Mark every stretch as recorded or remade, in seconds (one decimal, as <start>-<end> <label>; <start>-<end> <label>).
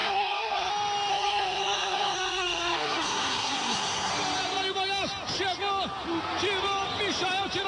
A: 0.0-0.7 remade; 0.7-1.1 recorded; 1.1-4.1 remade; 4.1-7.7 recorded